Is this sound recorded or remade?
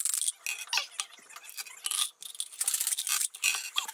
recorded